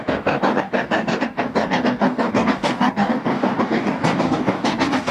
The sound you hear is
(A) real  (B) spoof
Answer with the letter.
B